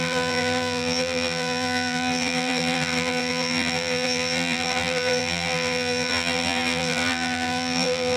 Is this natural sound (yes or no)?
no